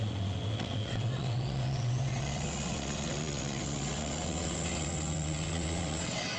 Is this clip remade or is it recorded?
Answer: remade